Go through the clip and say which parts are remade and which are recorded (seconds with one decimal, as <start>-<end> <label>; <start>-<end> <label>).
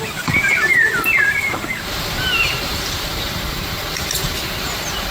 0.0-5.1 remade